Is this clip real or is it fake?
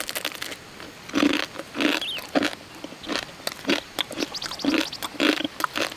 real